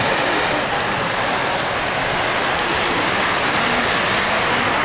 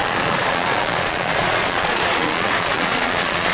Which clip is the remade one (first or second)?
second